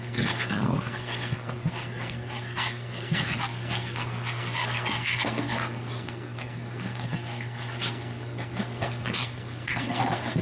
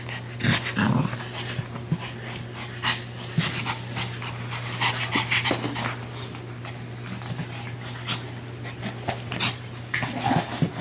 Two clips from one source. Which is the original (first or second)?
second